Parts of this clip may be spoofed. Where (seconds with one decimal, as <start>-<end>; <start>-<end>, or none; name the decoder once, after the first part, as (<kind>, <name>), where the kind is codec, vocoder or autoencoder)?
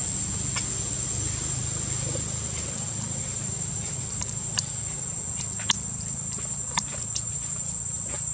2.1-4.7 (vocoder, BigVGAN v2)